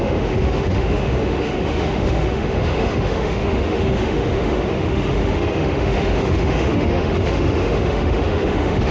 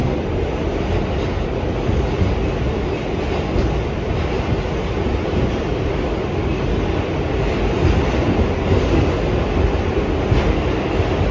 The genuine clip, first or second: second